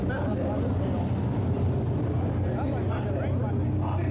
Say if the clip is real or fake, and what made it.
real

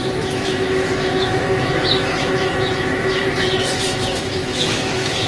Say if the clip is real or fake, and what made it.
fake, autoencoder, DAC-VAE